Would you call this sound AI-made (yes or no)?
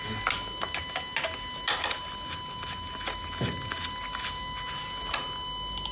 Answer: no